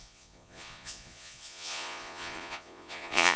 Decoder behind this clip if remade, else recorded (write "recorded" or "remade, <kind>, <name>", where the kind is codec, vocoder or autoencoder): remade, vocoder, Vocos